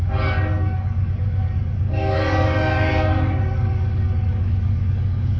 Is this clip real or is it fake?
fake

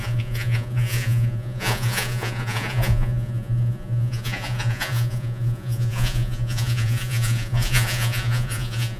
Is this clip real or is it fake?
fake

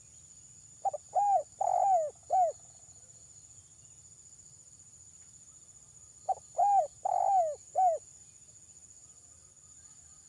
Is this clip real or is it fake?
real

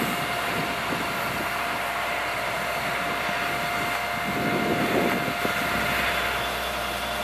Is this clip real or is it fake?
real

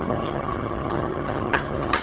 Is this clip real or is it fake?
fake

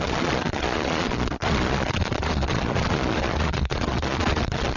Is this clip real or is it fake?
fake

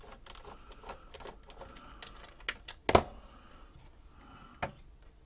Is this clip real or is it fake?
real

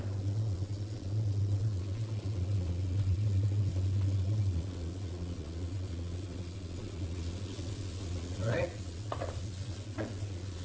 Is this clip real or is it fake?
fake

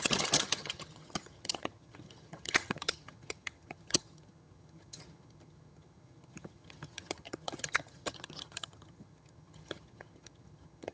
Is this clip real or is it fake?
fake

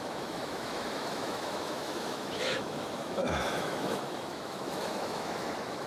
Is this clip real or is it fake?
fake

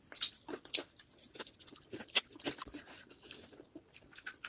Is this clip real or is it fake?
fake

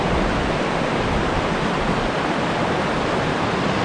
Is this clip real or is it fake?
real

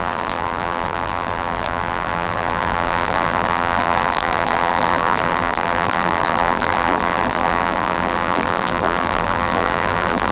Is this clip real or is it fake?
fake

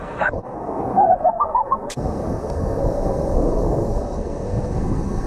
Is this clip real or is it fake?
fake